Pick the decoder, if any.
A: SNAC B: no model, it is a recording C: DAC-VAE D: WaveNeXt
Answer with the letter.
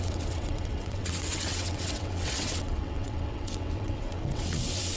D